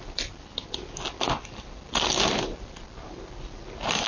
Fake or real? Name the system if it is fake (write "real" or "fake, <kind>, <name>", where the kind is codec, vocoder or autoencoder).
real